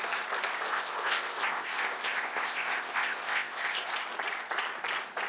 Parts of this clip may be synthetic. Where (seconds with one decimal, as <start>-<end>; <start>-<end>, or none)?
0.7-3.9